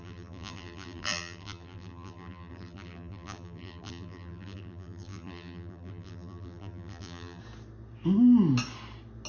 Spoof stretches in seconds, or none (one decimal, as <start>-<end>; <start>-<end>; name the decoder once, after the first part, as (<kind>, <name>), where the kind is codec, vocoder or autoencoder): 0.0-7.4 (vocoder, BigVGAN v2)